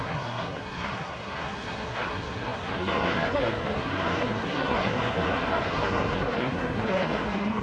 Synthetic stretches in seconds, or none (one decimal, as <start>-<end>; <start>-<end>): 0.0-7.6